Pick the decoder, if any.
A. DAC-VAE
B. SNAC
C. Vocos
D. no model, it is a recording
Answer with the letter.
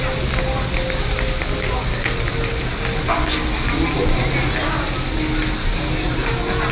D